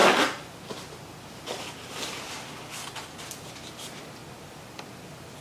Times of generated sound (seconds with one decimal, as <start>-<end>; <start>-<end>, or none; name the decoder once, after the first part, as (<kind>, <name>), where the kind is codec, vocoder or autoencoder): none